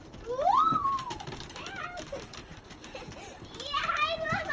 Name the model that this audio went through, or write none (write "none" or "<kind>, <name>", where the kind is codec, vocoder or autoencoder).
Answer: none